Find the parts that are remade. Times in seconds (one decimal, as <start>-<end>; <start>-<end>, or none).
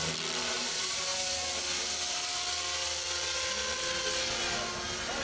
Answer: none